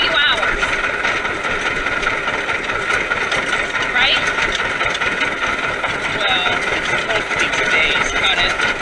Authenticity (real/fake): real